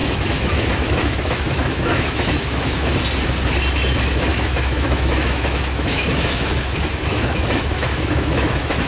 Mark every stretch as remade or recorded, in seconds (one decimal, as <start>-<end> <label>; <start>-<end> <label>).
0.0-2.9 remade; 2.9-4.3 recorded; 4.3-8.9 remade